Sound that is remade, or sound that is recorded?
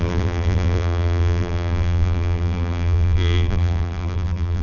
remade